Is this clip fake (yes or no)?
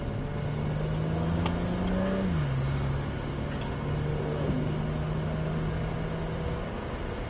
no